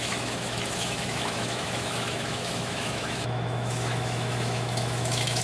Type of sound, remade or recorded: remade